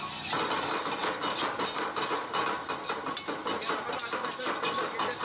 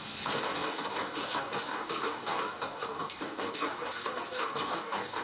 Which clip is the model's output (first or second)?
second